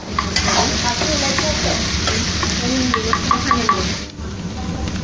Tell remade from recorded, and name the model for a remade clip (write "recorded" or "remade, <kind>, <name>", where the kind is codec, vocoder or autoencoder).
recorded